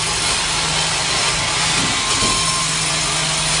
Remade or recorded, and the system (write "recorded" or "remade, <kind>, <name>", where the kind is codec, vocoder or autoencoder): recorded